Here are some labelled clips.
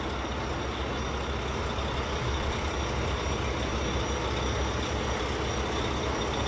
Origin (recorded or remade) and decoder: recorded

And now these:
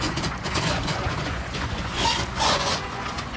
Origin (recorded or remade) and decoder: remade, vocoder, Vocos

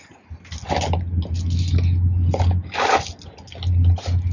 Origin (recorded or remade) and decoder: recorded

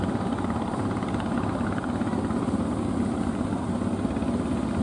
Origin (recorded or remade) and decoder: recorded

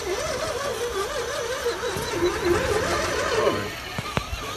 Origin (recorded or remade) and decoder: recorded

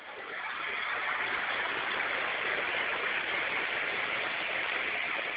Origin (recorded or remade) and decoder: recorded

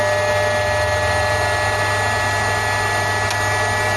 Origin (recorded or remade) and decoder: recorded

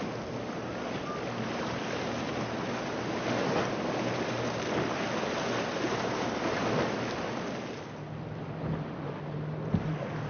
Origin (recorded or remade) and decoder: recorded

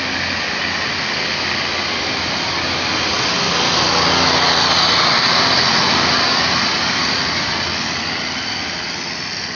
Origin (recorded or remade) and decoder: recorded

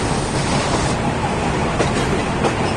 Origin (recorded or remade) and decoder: remade, vocoder, BigVGAN v2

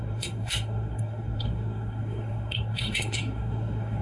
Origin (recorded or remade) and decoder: remade, codec, SNAC